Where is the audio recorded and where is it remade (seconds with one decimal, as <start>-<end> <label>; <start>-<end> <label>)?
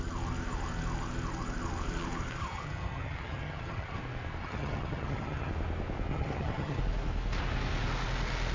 0.0-2.4 recorded; 2.4-4.0 remade; 4.0-4.4 recorded; 4.4-5.5 remade; 5.5-6.1 recorded; 6.1-6.8 remade; 6.8-8.5 recorded